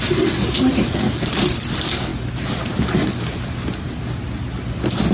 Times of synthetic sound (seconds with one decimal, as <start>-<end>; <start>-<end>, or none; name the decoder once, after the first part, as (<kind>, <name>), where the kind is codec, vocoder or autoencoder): none